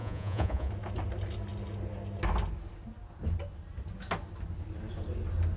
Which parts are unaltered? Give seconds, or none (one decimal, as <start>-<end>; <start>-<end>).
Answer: 0.7-5.6